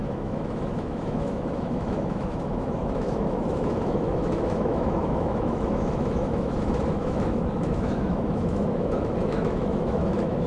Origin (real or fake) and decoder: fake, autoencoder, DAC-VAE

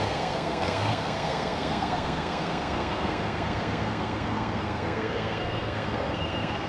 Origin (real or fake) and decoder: fake, codec, SNAC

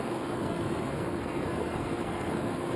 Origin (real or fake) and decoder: fake, codec, SNAC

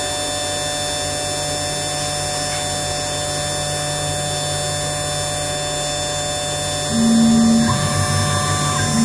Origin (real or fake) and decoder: real